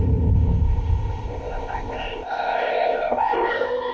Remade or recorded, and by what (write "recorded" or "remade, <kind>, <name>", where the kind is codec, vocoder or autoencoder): remade, codec, ZipCodec